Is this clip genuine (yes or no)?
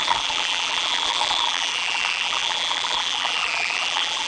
no